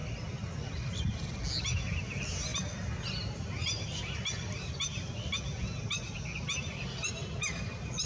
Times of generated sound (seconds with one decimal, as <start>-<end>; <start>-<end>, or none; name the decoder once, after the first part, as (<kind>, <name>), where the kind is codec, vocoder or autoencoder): none

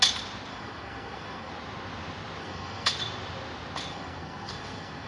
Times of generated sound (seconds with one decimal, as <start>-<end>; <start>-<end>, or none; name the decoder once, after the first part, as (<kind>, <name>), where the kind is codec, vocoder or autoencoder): 0.5-1.5 (codec, SNAC); 2.4-2.9; 3.9-5.1

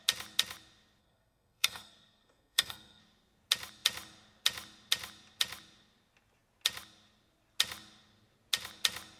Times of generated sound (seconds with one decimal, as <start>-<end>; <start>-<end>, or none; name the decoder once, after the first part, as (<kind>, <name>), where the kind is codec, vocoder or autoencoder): 1.0-3.0 (codec, SNAC)

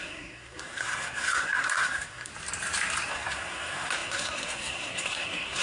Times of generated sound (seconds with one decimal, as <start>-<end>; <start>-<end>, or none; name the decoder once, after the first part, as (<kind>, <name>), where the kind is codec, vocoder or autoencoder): 0.0-2.3 (codec, SNAC); 3.1-5.6

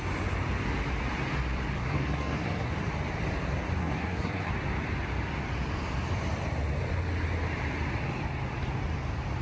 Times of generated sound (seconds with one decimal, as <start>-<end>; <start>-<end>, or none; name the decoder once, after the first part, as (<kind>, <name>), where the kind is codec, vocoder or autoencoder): 1.8-2.7 (codec, SNAC); 3.8-4.5

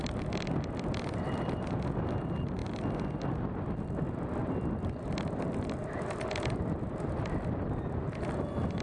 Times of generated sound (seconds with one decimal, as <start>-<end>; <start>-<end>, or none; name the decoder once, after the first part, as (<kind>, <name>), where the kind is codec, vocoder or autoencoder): none

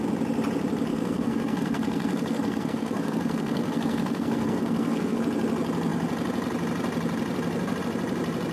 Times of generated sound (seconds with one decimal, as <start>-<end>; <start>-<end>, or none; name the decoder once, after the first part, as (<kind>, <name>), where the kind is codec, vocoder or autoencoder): 0.9-5.2 (codec, SNAC)